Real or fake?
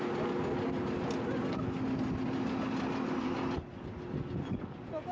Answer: real